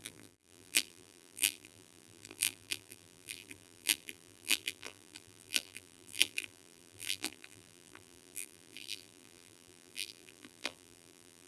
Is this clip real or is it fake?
fake